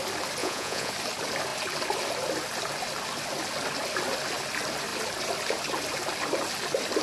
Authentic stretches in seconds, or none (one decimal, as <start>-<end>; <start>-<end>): 0.0-0.4; 0.9-7.0